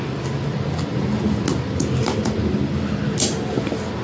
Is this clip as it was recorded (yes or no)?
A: yes